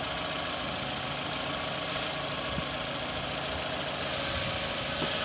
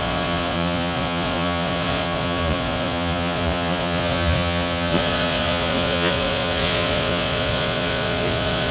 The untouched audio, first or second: first